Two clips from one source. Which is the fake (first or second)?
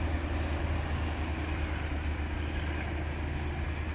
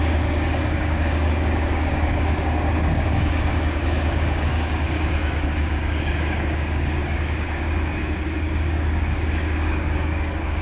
second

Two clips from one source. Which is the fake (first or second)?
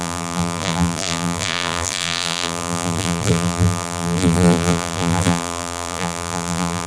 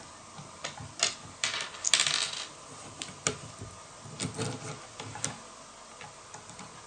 first